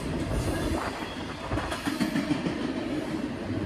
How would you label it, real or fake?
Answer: fake